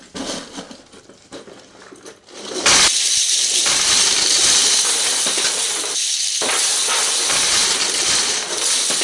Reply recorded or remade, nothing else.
recorded